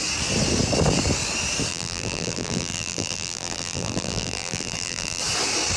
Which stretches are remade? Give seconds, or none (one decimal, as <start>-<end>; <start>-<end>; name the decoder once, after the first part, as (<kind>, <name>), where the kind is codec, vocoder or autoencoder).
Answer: 1.7-5.2 (vocoder, BigVGAN v2)